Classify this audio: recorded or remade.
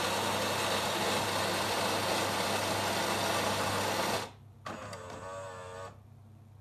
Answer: recorded